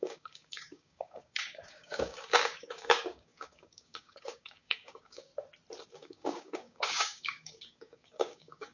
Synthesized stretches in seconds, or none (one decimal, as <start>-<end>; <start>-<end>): 0.0-5.3; 5.9-8.7